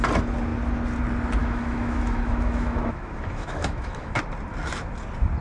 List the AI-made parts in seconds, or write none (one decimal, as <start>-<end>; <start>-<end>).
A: 1.4-4.2